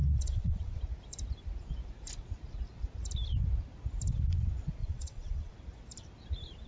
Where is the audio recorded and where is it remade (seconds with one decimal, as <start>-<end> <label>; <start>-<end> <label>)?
0.0-0.8 remade; 0.8-4.8 recorded; 4.8-5.5 remade; 5.5-6.7 recorded